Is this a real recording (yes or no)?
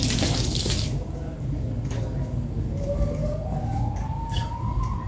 no